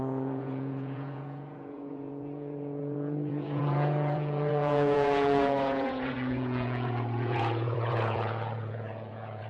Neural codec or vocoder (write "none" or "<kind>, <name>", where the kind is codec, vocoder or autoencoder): vocoder, Vocos